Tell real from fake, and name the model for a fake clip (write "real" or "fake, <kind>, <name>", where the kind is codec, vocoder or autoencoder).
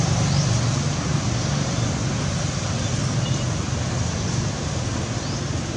real